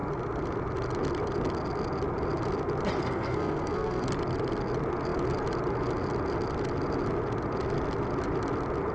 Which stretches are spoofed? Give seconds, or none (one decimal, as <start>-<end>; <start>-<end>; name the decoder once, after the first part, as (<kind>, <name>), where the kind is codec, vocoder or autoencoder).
3.0-4.0 (codec, SNAC)